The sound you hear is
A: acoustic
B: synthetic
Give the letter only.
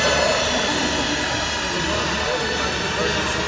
A